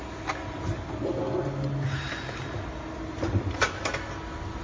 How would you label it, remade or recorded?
recorded